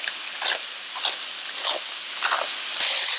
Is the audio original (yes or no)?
yes